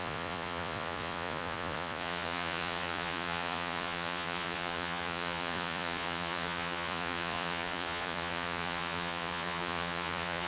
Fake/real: fake